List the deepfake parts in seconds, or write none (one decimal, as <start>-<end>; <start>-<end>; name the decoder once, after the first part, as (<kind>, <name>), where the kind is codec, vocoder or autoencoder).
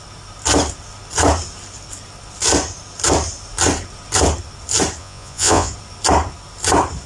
5.0-5.7 (vocoder, Vocos)